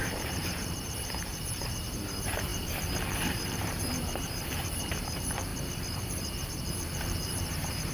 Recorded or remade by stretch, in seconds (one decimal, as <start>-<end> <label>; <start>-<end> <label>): 0.0-5.5 remade; 5.5-6.0 recorded; 6.0-7.9 remade